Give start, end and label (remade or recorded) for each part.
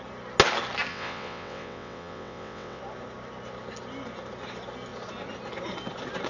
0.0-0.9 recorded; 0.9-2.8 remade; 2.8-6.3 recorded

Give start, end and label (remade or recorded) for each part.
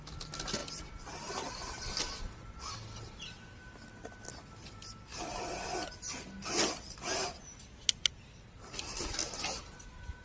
0.0-10.2 recorded